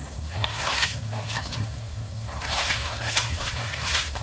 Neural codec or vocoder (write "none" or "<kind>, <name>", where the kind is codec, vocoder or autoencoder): codec, SNAC